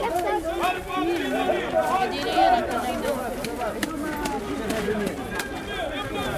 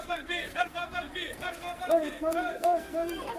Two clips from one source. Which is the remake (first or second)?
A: second